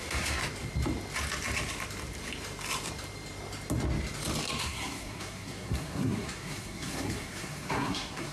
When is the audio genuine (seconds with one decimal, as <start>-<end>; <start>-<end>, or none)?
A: 0.4-4.6